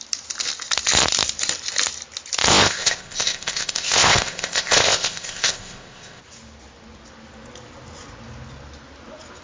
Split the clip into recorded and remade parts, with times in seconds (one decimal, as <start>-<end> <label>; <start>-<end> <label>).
0.0-2.5 recorded; 2.5-6.2 remade; 6.2-9.4 recorded